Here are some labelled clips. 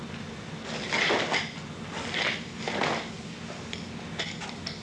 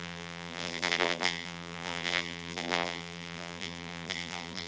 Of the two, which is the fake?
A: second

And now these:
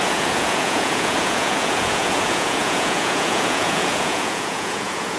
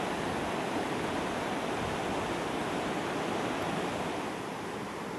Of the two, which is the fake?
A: first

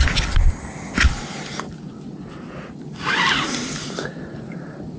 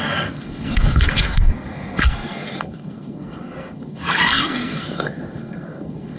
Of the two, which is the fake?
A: second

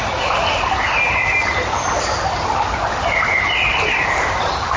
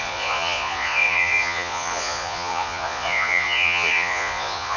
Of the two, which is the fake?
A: second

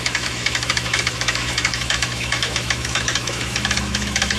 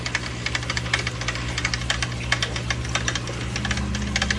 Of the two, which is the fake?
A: first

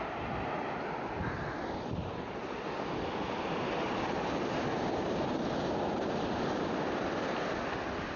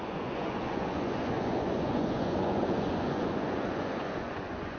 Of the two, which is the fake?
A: second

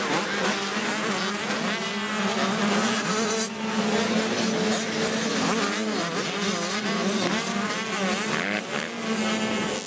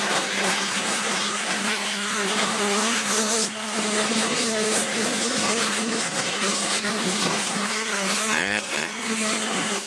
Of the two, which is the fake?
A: second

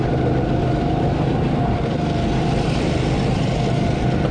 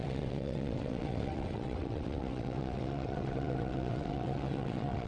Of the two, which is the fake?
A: second